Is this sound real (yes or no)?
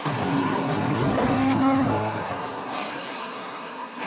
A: no